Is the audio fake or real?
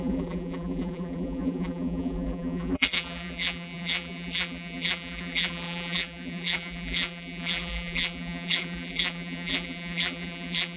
fake